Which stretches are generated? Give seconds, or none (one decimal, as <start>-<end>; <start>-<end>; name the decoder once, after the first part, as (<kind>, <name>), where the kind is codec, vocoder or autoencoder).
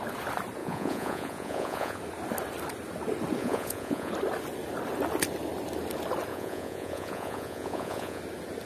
0.6-2.0 (vocoder, Vocos); 3.4-4.1; 6.3-8.2